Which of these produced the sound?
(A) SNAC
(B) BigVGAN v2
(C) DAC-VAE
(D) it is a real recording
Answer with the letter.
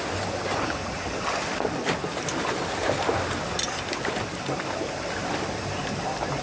D